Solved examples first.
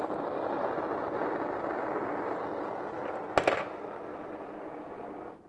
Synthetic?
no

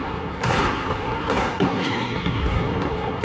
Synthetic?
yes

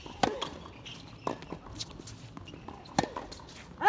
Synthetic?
no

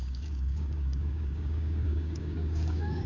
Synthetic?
yes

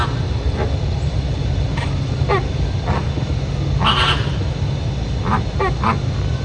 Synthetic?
no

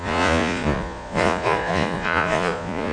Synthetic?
yes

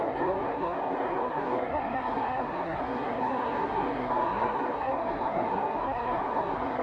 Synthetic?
yes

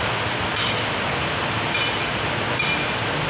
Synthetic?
no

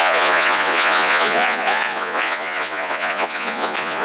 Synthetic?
yes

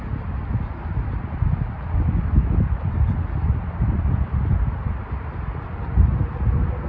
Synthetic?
no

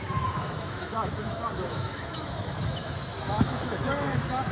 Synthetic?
yes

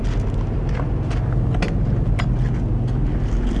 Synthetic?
no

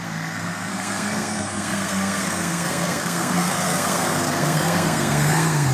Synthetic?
yes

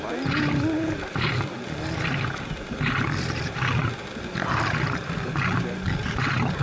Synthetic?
no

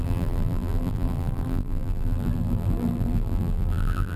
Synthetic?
yes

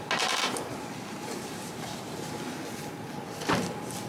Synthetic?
no